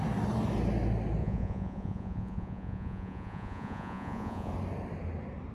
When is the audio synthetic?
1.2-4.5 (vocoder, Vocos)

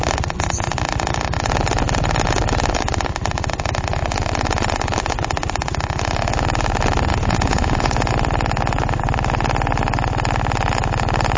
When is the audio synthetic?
7.1-8.1 (vocoder, Vocos)

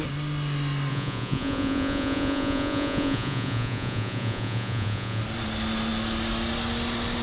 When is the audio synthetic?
0.9-5.2 (vocoder, Vocos)

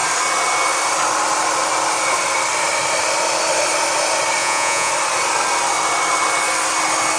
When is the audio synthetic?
4.4-4.9 (vocoder, Vocos)

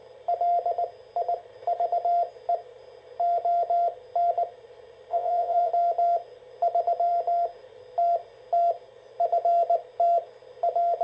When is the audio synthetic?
5.1-5.7 (vocoder, Vocos)

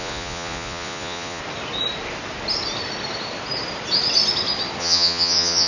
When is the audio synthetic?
0.0-1.4 (vocoder, Vocos); 4.8-5.7

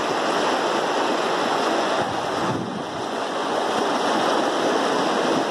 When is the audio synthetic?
1.1-4.4 (vocoder, Vocos)

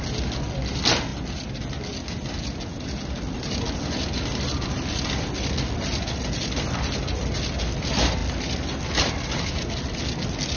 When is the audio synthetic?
none